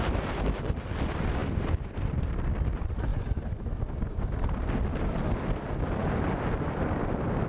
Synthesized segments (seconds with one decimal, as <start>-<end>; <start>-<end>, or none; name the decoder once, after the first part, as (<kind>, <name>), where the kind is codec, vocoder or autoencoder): 0.0-7.5 (vocoder, BigVGAN v2)